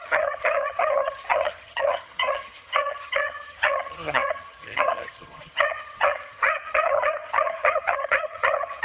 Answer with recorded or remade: remade